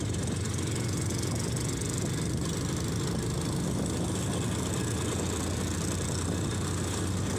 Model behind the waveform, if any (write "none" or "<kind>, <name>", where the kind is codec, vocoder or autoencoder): none